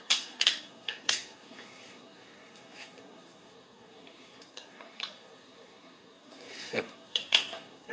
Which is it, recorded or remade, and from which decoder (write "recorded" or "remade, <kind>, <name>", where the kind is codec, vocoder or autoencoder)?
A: remade, codec, SNAC